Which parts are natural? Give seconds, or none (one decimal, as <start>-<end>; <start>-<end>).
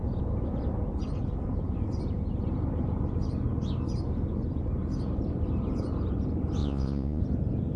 0.0-6.6; 7.2-7.8